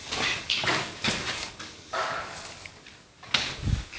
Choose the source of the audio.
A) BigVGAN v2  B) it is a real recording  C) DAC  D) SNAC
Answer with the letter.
C